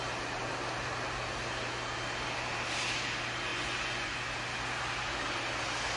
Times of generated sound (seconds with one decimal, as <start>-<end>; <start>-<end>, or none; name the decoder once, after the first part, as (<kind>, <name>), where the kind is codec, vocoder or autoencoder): 3.5-4.2 (vocoder, Vocos)